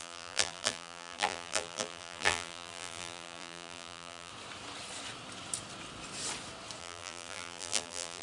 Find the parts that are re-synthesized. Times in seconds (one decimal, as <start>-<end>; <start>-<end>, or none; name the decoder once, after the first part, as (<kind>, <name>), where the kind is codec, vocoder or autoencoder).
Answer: 0.0-4.3 (vocoder, BigVGAN v2); 6.8-8.2